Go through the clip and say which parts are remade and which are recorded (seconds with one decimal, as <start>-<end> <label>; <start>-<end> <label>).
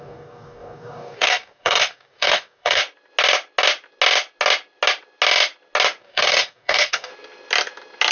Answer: 0.0-2.8 remade; 2.8-6.0 recorded; 6.0-7.1 remade; 7.1-8.1 recorded